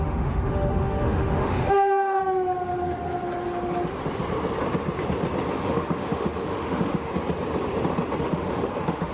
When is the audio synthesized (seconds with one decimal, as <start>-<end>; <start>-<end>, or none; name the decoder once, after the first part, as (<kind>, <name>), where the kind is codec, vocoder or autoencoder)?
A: 0.0-2.2 (autoencoder, DAC-VAE); 5.5-7.1; 8.2-9.1